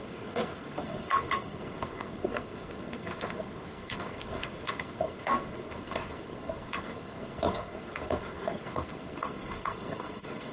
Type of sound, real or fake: fake